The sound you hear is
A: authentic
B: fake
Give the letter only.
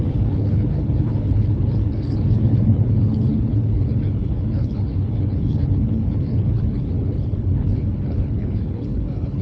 B